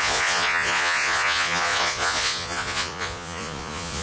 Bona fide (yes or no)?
no